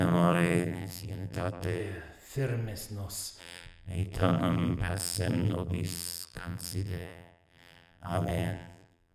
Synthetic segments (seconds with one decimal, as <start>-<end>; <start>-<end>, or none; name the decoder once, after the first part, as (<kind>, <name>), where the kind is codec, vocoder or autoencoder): 0.0-1.8 (vocoder, BigVGAN v2); 3.4-9.1